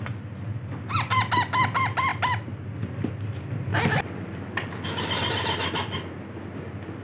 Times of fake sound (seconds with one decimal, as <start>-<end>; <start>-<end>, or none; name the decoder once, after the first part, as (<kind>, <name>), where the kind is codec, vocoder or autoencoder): none